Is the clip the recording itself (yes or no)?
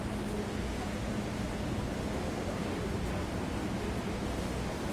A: yes